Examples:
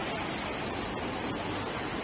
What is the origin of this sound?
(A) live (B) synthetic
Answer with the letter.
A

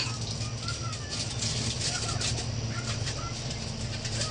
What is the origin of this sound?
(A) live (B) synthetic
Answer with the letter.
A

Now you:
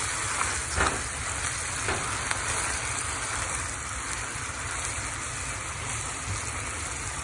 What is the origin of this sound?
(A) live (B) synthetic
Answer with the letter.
A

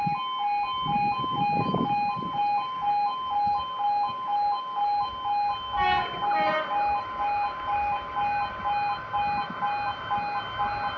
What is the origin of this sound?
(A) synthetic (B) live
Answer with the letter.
B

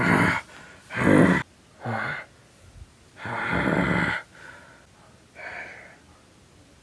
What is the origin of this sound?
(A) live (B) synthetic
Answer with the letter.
A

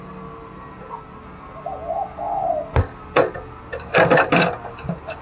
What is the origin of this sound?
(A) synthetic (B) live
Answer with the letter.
B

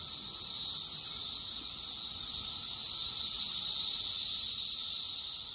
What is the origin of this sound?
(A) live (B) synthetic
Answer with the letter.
A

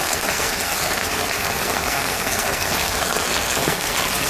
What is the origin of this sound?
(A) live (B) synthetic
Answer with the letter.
B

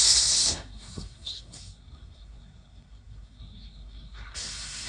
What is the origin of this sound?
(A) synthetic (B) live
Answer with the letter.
A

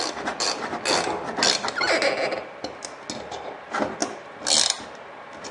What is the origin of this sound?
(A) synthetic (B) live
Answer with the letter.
B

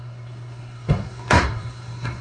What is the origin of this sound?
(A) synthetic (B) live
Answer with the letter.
A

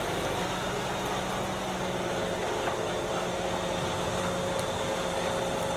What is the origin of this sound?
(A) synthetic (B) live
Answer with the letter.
B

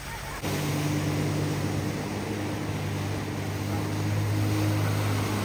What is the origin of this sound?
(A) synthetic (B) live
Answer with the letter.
B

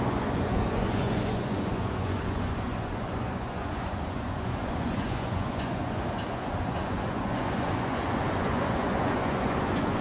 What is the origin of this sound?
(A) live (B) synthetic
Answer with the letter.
B